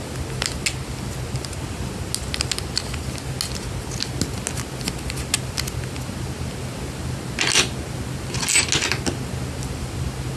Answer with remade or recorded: recorded